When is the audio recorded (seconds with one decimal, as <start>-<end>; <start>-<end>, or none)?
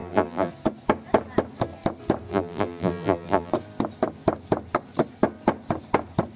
0.5-2.3; 3.5-6.4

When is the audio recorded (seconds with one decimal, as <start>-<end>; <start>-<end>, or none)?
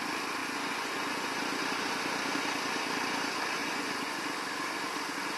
0.0-0.4; 1.3-3.6; 4.2-5.4